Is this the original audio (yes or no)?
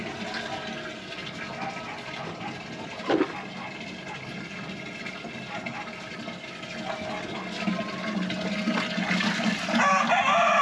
yes